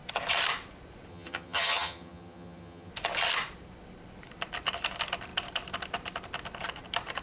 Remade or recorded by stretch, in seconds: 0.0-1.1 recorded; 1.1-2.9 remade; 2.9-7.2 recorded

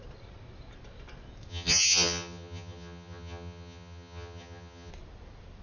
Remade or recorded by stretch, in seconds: 0.0-1.5 recorded; 1.5-4.9 remade; 4.9-5.6 recorded

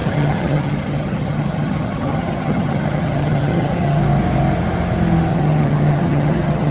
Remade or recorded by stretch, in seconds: 0.0-4.0 remade; 4.0-5.3 recorded; 5.3-6.7 remade

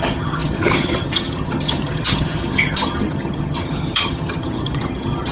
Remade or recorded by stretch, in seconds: 0.0-5.3 remade

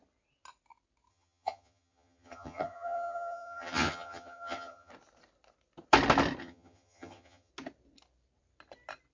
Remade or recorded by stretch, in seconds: 0.0-1.1 recorded; 1.1-4.9 remade; 4.9-6.4 recorded; 6.4-7.5 remade; 7.5-9.1 recorded